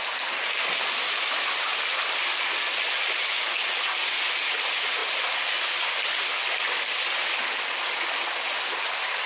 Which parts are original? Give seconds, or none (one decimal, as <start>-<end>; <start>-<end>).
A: 0.0-9.3